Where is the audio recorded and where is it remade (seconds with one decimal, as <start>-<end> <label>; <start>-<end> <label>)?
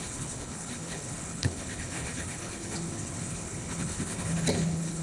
0.0-5.0 remade